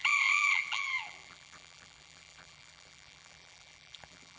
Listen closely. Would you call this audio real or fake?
fake